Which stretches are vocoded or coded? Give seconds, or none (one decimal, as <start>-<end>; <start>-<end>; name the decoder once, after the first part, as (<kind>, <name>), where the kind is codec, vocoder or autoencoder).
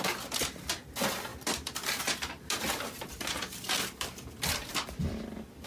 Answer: none